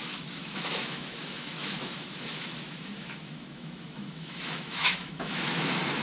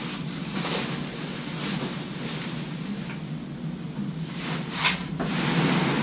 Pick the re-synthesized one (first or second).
first